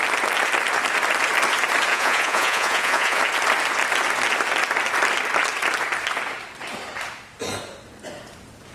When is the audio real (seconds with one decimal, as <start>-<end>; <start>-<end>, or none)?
0.0-1.9; 3.2-8.7